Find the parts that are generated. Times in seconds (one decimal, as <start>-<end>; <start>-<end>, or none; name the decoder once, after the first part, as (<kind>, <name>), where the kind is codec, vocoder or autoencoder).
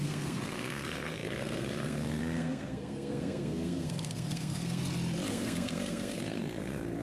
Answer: 0.0-4.8 (codec, SNAC); 5.3-7.0